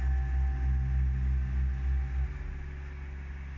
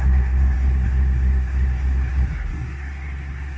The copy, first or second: second